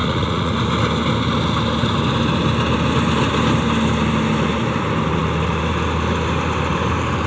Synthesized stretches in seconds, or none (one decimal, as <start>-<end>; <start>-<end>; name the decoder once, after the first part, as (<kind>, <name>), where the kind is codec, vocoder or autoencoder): 0.0-0.5 (vocoder, Vocos)

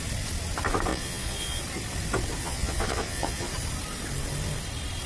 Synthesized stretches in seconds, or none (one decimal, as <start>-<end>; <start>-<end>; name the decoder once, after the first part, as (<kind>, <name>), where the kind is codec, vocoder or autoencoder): 0.9-1.6 (vocoder, Vocos); 2.4-3.5

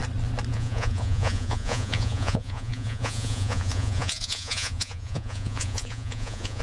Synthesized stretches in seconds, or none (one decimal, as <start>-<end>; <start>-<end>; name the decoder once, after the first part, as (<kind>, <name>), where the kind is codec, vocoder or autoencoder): 0.5-6.6 (vocoder, Vocos)

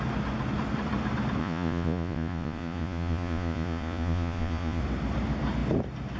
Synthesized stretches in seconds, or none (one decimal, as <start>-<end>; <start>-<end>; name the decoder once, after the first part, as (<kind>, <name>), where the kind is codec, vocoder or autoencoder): 1.4-4.8 (vocoder, Vocos)

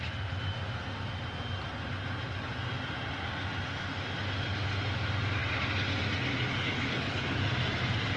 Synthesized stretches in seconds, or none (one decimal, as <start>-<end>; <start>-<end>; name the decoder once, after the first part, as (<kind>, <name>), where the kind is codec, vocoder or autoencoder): 6.5-7.4 (codec, HILCodec)

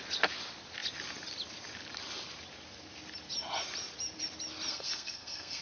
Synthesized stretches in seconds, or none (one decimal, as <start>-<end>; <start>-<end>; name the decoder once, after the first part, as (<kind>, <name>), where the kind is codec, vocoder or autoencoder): 4.7-5.6 (codec, SNAC)

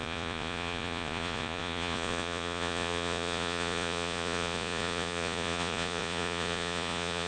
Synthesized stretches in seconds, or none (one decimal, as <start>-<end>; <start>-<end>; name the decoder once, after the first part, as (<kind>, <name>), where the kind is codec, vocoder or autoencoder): 0.0-7.3 (vocoder, Vocos)

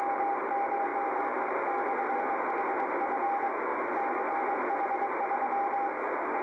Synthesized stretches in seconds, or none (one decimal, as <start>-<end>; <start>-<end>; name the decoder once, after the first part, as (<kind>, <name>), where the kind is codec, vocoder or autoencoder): 0.9-2.4 (vocoder, BigVGAN v2)